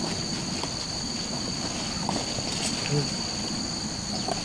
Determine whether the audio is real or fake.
real